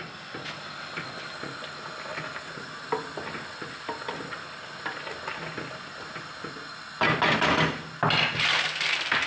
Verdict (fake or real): real